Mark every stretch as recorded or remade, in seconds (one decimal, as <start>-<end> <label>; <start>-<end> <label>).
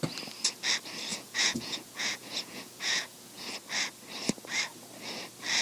0.0-1.1 recorded; 1.1-3.5 remade; 3.5-5.6 recorded